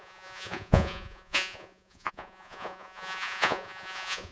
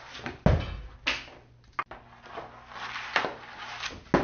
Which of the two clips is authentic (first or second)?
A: second